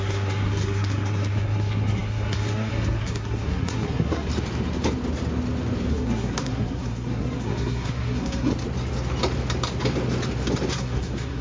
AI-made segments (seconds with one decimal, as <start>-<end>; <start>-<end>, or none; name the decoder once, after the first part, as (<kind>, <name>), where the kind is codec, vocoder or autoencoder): 0.0-4.3 (codec, SNAC); 5.9-8.5; 10.7-11.4